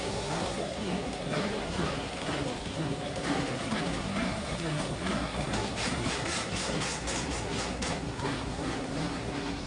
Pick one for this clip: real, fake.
fake